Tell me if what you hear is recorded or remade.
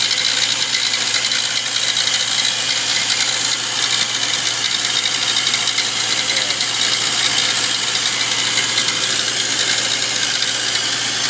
recorded